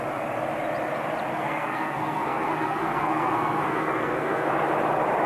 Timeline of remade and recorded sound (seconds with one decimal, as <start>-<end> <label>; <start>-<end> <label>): 0.0-1.3 recorded; 1.3-4.5 remade; 4.5-5.3 recorded